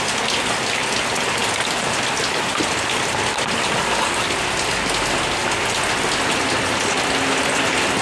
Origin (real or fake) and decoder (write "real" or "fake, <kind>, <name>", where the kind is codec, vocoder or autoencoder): real